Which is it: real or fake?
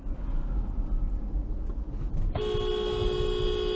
real